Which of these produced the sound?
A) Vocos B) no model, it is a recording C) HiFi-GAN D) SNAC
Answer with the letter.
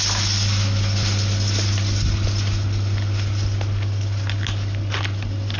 B